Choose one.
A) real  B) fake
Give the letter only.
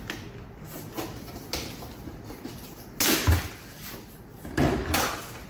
A